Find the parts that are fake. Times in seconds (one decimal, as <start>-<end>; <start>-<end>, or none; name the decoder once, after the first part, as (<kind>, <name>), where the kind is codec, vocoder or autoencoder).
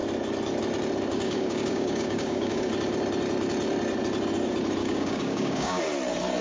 1.1-2.7 (codec, DAC); 4.8-5.8